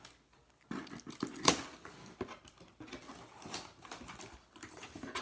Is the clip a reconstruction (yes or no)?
no